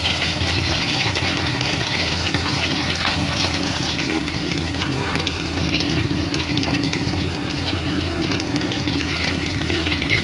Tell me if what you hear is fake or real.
fake